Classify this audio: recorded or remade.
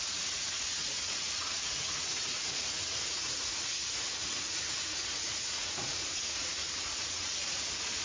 remade